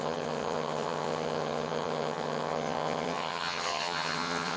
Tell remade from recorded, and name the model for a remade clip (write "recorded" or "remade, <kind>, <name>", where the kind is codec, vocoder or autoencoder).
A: remade, vocoder, HiFi-GAN